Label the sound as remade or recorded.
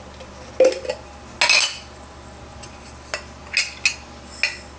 recorded